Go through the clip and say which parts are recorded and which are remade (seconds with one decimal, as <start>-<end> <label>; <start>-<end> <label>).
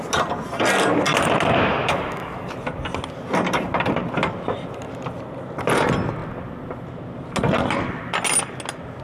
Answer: 0.0-1.7 recorded; 1.7-2.5 remade; 2.5-9.0 recorded